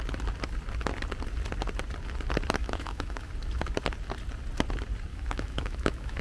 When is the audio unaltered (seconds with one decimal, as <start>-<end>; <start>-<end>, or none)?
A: 0.0-2.6; 3.3-5.1